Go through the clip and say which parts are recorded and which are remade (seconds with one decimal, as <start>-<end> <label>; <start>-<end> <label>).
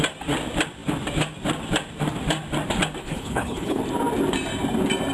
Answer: 0.0-3.0 recorded; 3.0-3.8 remade; 3.8-5.1 recorded